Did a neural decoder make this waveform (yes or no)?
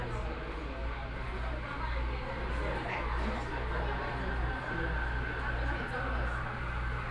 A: no